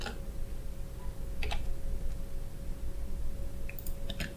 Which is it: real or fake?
real